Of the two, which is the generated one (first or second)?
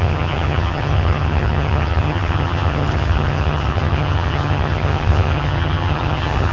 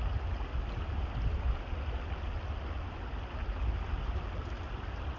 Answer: first